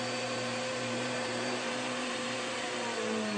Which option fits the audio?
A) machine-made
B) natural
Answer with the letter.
A